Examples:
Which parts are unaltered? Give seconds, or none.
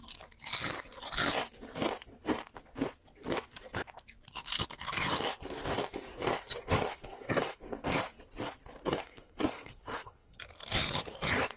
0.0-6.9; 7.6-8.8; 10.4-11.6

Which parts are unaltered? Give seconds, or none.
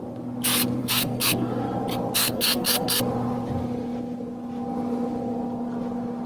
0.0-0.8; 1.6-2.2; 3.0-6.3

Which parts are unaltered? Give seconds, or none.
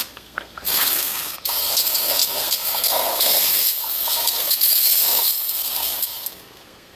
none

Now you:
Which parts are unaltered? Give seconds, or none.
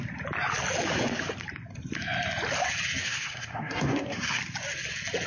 0.0-3.0; 4.4-5.3